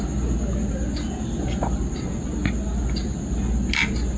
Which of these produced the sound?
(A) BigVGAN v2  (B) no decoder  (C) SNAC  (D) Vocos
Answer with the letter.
B